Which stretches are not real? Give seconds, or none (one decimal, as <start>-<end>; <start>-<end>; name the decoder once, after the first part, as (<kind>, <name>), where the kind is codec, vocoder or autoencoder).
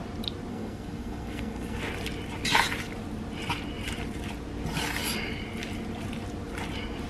0.5-1.8 (codec, SNAC)